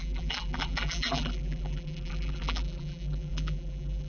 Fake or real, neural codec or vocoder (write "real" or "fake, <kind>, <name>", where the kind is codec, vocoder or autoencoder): fake, vocoder, BigVGAN v2